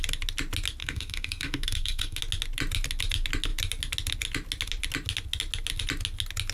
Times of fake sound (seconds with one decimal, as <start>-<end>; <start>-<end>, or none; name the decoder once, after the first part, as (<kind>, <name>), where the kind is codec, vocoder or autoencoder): 0.8-2.2 (codec, SNAC)